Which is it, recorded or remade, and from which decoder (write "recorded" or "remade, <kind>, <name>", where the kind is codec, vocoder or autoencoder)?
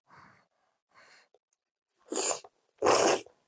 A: recorded